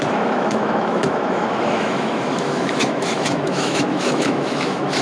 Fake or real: fake